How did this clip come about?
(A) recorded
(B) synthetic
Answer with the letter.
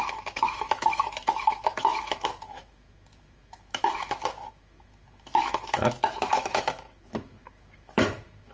B